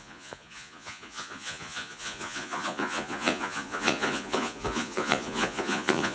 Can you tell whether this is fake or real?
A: fake